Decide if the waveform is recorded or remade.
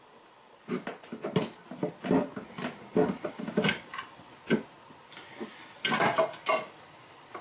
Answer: recorded